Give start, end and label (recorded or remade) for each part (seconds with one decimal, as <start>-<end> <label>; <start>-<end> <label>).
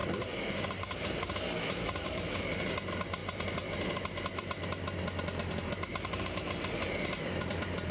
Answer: 0.0-1.2 remade; 1.2-2.0 recorded; 2.0-2.7 remade; 2.7-5.9 recorded; 5.9-6.9 remade; 6.9-7.9 recorded